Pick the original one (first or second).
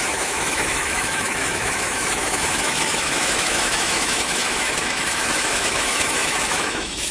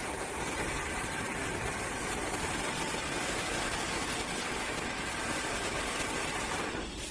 second